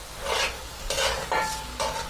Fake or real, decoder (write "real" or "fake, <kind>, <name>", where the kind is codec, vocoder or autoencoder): real